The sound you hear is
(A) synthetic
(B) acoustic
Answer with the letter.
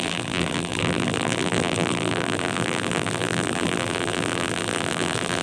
A